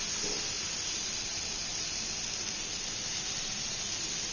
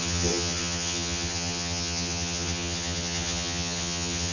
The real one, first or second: first